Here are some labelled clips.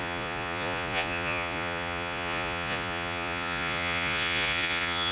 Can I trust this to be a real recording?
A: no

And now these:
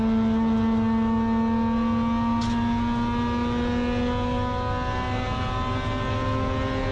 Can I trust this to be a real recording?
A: yes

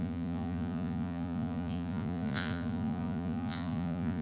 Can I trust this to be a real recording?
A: no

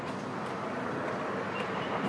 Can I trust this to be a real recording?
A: yes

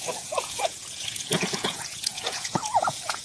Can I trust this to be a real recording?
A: no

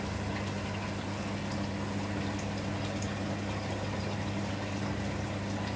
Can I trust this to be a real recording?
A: yes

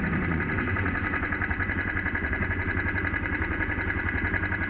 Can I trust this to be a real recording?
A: no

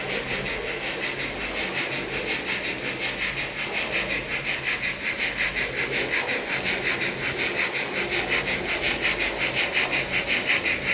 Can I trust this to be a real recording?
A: yes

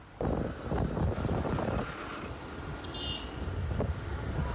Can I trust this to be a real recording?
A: yes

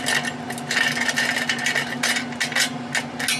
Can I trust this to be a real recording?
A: yes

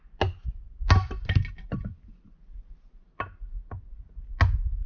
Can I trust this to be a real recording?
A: yes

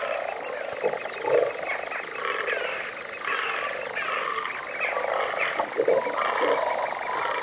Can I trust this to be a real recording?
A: yes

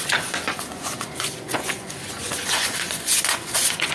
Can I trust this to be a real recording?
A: no